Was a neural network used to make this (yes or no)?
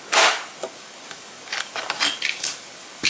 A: yes